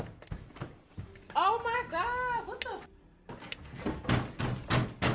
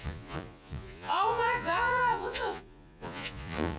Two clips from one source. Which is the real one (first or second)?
first